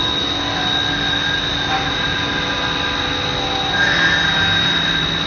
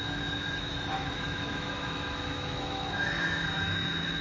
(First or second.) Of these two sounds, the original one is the first